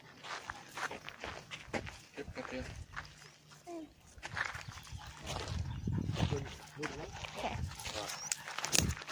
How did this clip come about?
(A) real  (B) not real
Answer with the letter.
A